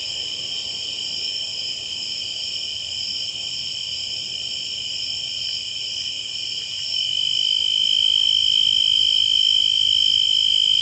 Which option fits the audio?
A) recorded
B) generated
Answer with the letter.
A